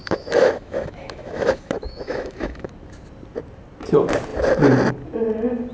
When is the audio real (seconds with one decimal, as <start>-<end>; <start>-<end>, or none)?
2.7-5.7